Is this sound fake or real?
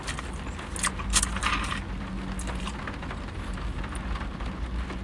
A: real